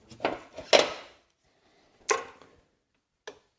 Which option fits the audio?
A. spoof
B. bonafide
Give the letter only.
B